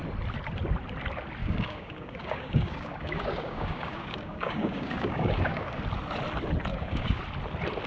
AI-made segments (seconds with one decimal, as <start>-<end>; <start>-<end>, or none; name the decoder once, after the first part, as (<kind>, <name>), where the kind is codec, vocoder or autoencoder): 1.4-5.8 (codec, DAC); 6.7-7.2